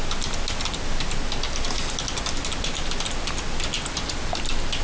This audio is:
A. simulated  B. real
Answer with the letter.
B